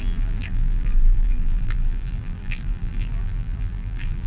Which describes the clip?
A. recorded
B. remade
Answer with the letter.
B